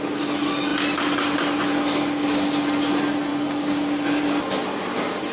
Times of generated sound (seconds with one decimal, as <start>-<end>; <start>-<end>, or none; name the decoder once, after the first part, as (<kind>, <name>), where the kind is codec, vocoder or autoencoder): none